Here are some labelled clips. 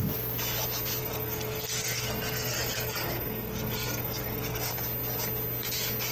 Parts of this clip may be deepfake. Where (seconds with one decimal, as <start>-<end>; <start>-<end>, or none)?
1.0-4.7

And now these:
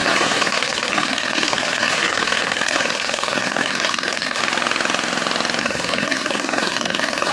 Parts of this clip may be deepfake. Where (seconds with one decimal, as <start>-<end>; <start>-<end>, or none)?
0.0-4.4; 5.6-7.3

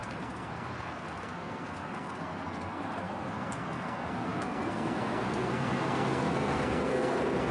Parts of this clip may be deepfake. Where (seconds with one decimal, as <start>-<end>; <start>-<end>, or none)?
0.0-7.5

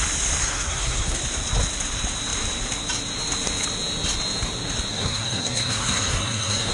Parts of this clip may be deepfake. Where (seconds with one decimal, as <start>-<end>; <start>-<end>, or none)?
0.4-1.2; 4.9-6.7

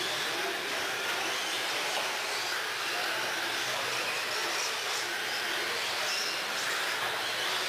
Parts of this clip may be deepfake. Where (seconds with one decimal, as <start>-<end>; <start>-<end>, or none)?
none

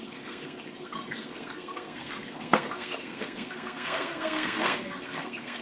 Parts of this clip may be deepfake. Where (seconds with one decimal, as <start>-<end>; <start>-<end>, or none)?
0.0-5.6

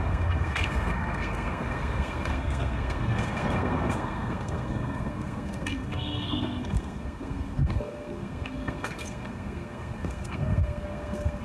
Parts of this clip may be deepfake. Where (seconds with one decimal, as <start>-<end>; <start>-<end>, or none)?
0.0-11.4